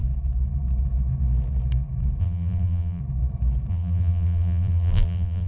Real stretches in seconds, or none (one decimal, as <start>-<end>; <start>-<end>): 0.0-2.2; 3.0-3.7